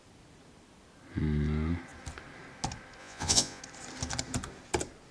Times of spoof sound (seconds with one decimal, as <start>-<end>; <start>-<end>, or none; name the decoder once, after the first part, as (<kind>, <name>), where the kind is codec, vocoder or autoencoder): 3.0-3.6 (vocoder, Vocos)